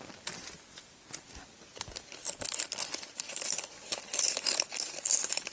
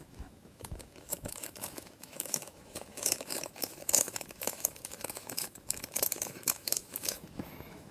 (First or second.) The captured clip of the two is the first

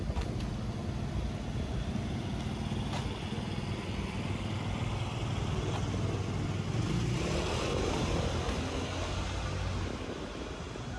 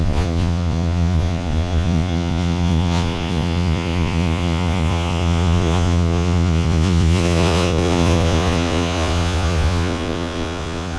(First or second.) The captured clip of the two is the first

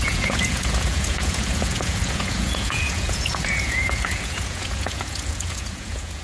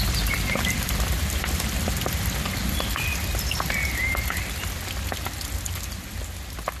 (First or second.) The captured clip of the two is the second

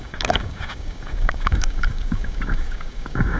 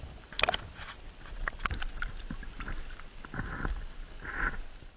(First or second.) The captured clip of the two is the second